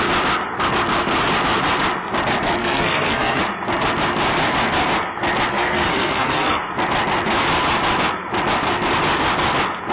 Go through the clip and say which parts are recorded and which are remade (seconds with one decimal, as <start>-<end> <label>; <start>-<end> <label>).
0.0-2.6 recorded; 2.6-3.4 remade; 3.4-5.5 recorded; 5.5-6.6 remade; 6.6-9.9 recorded